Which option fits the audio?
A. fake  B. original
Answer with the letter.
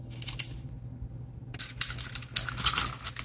B